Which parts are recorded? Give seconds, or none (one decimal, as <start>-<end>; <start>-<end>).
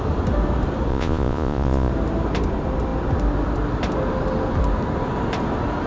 0.0-0.9; 1.9-5.9